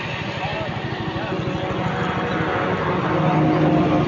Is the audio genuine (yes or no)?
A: yes